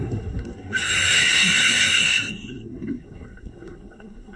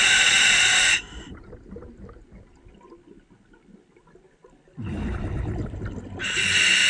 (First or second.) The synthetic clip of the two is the first